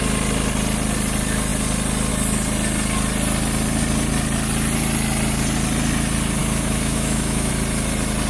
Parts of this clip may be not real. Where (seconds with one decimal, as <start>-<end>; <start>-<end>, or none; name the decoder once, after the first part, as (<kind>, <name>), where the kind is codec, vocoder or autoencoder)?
6.4-7.5 (autoencoder, DAC-VAE)